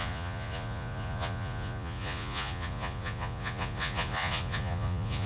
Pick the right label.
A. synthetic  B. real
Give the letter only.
A